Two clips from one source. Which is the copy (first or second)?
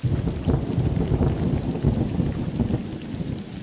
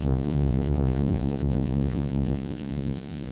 second